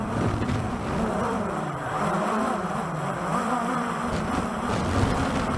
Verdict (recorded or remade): remade